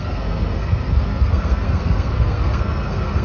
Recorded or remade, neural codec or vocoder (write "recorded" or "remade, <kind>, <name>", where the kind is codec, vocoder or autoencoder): remade, codec, SNAC